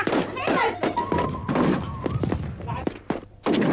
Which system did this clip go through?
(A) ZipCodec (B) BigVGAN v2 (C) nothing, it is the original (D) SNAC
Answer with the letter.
C